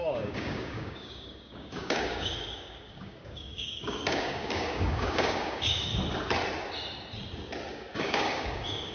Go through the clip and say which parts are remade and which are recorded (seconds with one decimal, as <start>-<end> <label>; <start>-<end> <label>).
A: 0.0-5.9 remade; 5.9-7.7 recorded; 7.7-8.9 remade

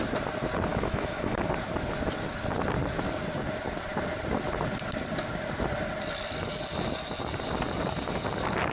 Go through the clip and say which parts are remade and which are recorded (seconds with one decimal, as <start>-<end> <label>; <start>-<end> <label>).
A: 0.0-0.7 recorded; 0.7-1.5 remade; 1.5-8.7 recorded